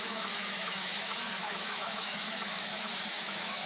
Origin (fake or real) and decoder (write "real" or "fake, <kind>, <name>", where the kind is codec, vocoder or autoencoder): fake, autoencoder, DAC-VAE